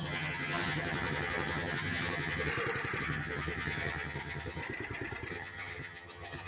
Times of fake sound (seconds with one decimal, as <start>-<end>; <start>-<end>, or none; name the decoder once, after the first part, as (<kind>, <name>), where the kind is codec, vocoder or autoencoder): 0.0-2.5 (vocoder, HiFi-GAN); 3.0-4.6; 5.3-6.5